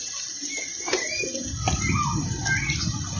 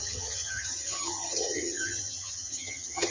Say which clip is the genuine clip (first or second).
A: first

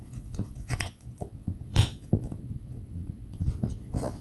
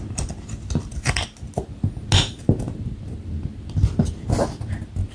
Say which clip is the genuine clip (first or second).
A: second